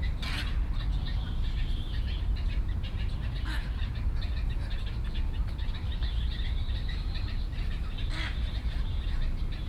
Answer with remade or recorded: recorded